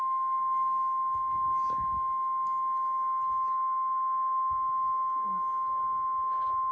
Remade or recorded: recorded